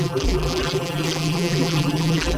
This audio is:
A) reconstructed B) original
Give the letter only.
A